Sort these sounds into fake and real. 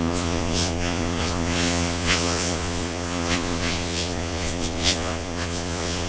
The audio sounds fake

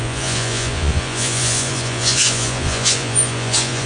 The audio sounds fake